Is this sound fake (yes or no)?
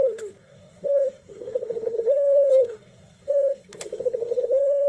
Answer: yes